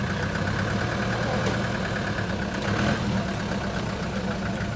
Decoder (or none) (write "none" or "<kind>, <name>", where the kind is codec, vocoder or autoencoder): none